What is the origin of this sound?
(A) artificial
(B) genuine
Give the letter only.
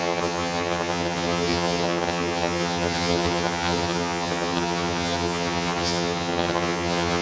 A